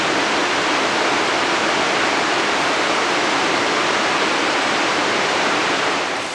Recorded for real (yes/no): no